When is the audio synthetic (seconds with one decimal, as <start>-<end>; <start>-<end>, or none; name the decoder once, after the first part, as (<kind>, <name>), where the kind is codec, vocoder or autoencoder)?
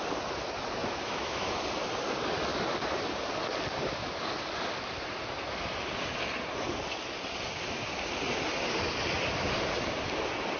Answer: 0.8-1.5 (autoencoder, DAC-VAE)